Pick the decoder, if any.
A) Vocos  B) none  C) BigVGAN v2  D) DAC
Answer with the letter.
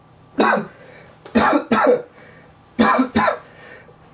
B